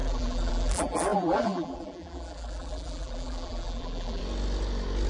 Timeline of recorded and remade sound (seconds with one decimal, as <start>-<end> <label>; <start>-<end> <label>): 0.0-4.2 remade; 4.2-5.1 recorded